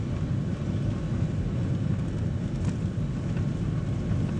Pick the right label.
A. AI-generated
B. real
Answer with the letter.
B